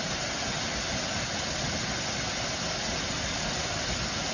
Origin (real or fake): real